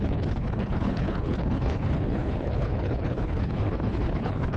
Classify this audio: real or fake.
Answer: fake